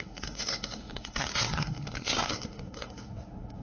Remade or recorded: remade